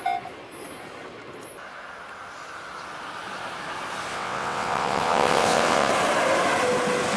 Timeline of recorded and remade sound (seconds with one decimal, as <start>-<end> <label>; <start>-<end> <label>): 0.0-4.1 recorded; 4.1-5.9 remade; 5.9-7.2 recorded